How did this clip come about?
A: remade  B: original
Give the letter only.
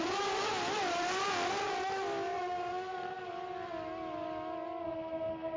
B